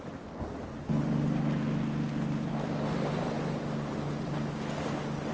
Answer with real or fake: real